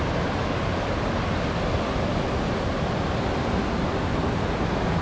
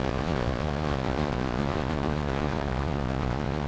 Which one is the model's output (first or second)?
second